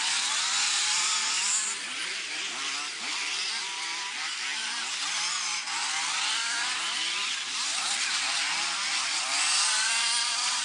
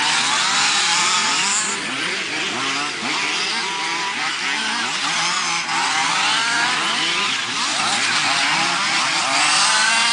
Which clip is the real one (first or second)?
second